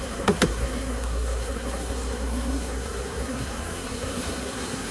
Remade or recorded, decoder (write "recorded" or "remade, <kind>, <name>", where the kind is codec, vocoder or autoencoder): remade, codec, SNAC